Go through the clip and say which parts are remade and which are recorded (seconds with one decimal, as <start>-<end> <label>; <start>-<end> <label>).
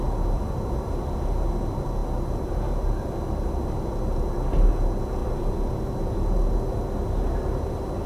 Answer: 0.0-8.1 recorded